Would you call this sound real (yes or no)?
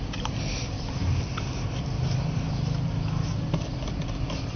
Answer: yes